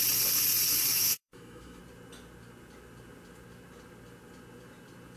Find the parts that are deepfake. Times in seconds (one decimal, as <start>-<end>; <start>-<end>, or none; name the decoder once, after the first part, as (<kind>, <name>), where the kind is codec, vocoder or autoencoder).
0.9-1.8 (autoencoder, DAC-VAE)